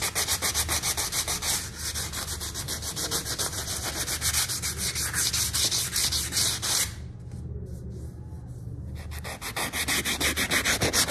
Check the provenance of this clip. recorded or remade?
recorded